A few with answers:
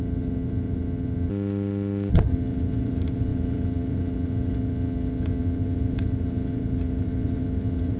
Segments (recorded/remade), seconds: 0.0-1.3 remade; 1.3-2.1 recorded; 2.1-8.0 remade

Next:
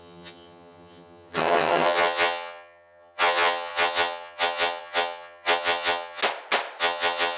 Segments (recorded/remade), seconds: 0.0-6.2 remade; 6.2-6.8 recorded; 6.8-7.4 remade

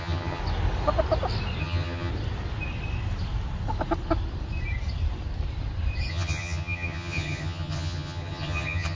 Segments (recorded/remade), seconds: 0.0-0.4 remade; 0.4-1.6 recorded; 1.6-2.1 remade; 2.1-6.1 recorded; 6.1-9.0 remade

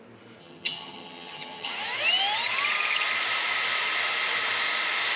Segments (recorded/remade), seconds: 0.0-0.4 recorded; 0.4-1.7 remade; 1.7-5.2 recorded